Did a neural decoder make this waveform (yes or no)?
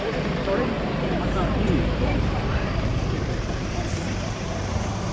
yes